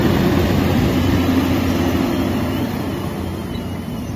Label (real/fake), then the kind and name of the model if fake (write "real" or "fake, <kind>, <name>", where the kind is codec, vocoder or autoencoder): real